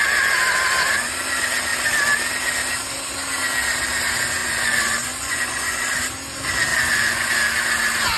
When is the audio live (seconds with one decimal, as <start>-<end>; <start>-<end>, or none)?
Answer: 0.0-4.4; 6.0-6.7; 7.3-8.2